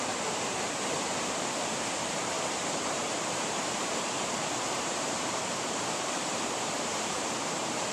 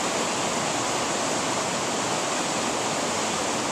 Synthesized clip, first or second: first